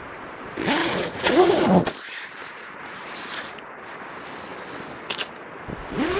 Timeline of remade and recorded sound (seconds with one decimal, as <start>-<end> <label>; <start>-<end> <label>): 0.0-0.8 recorded; 0.8-1.5 remade; 1.5-2.4 recorded; 2.4-3.1 remade; 3.1-6.2 recorded